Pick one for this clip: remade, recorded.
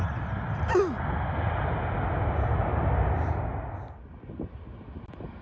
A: recorded